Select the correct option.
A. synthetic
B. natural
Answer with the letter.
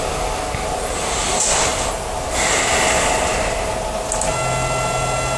B